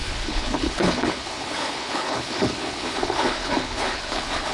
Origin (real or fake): fake